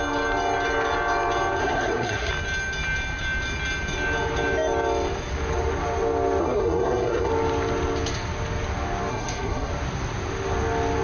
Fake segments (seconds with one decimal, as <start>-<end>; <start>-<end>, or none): 1.6-2.3; 6.4-7.3; 9.1-9.7